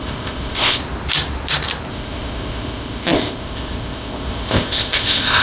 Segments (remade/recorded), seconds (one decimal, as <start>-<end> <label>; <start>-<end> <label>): 0.0-0.8 remade; 0.8-1.9 recorded; 1.9-5.4 remade